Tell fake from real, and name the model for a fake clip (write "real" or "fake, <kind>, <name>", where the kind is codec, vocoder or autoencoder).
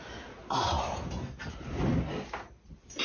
real